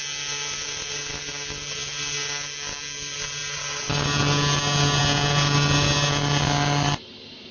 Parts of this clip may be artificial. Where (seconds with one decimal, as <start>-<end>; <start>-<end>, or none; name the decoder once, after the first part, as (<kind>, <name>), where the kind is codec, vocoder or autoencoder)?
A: none